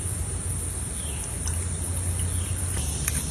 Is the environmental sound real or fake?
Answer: real